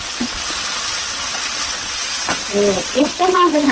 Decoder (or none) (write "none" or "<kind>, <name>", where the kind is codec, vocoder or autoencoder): vocoder, WaveNeXt